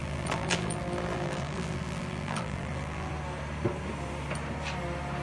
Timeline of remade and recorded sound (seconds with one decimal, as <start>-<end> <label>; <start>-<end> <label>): 0.0-3.1 remade; 3.1-5.2 recorded